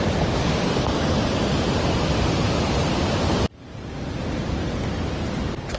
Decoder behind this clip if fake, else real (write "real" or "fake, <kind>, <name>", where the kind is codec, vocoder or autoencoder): real